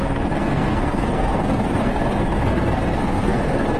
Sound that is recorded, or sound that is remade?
remade